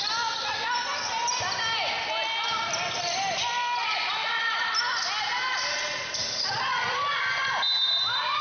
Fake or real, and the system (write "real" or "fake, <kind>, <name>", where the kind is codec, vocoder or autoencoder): real